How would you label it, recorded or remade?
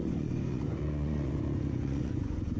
remade